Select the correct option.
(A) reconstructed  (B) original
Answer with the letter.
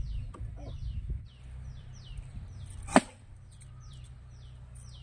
A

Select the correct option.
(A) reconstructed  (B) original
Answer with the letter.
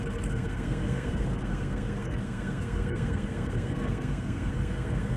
A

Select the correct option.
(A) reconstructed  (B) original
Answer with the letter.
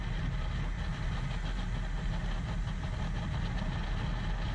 B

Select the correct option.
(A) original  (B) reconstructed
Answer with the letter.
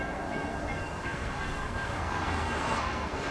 B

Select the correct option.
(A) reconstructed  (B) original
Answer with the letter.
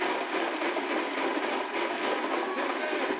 B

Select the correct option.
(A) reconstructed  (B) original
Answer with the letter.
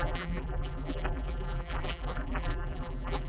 A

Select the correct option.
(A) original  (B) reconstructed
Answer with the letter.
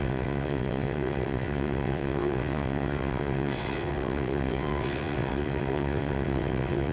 B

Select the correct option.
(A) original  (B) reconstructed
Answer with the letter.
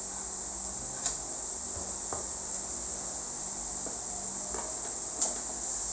A